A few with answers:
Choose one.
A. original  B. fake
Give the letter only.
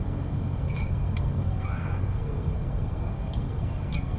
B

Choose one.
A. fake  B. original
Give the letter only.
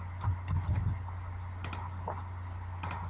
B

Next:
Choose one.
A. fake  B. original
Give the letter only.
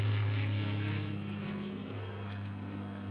A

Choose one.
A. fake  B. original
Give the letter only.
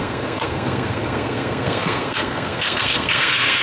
A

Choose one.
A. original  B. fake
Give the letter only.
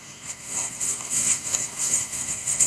B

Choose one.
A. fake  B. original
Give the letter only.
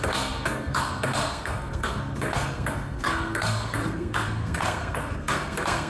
A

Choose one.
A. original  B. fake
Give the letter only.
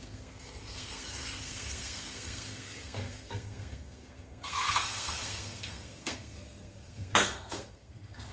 B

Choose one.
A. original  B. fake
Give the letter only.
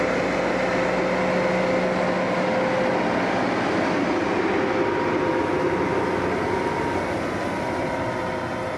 A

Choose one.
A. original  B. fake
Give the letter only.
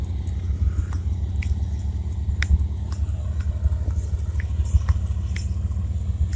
A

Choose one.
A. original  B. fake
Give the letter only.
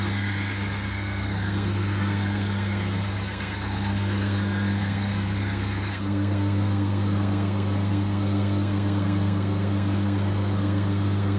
B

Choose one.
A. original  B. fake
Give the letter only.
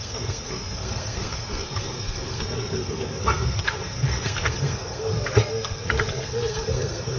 B